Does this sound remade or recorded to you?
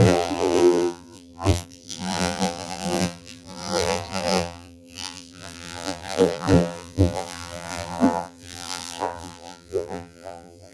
remade